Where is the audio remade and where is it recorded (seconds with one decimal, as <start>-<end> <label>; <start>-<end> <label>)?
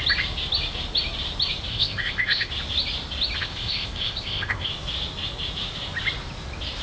0.0-1.7 recorded; 1.7-2.5 remade; 2.5-3.4 recorded; 3.4-4.7 remade; 4.7-6.8 recorded